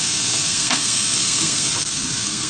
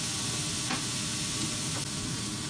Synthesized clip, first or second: first